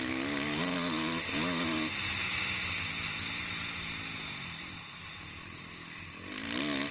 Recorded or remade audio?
recorded